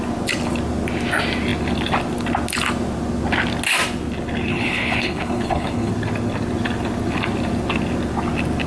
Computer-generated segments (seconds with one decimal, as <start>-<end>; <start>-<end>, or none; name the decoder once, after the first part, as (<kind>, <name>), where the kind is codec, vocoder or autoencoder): 4.5-5.9 (codec, HILCodec)